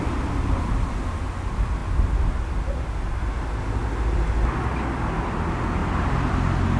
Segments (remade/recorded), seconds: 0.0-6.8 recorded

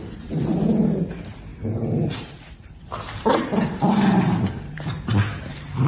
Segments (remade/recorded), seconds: 0.0-5.1 remade; 5.1-5.9 recorded

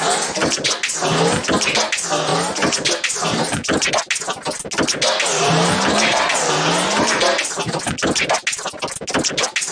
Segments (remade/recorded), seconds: 0.0-2.3 recorded; 2.3-3.9 remade; 3.9-5.3 recorded; 5.3-7.9 remade; 7.9-9.7 recorded

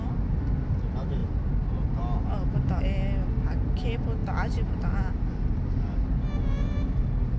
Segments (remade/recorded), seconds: 0.0-7.4 recorded

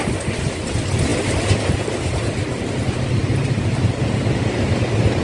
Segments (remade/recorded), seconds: 0.0-3.2 recorded; 3.2-4.7 remade; 4.7-5.2 recorded

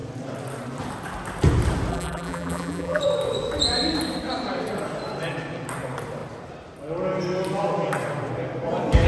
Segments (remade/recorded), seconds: 0.0-1.9 recorded; 1.9-3.0 remade; 3.0-9.1 recorded